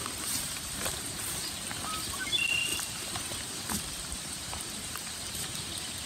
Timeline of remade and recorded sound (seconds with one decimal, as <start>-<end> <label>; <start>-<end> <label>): 0.0-1.5 remade; 1.5-2.7 recorded; 2.7-5.5 remade; 5.5-6.1 recorded